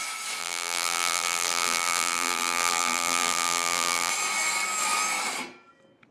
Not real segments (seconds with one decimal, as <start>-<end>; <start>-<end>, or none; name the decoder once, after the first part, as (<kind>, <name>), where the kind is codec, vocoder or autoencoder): 0.4-4.1 (vocoder, BigVGAN v2)